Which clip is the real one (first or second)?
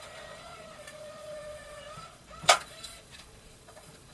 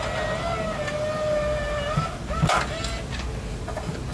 second